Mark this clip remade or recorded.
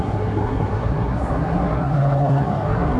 remade